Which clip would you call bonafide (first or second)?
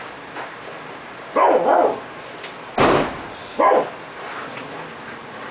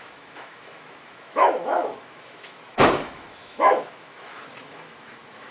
first